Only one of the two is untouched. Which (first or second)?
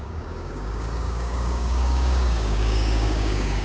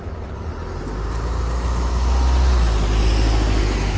second